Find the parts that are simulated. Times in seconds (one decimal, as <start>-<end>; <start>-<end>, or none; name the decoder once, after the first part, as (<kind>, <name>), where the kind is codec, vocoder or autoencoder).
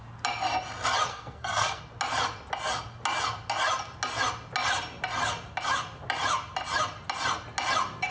1.1-1.8 (codec, SNAC)